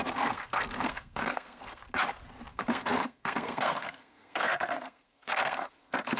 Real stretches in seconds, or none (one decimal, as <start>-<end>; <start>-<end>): 1.8-2.5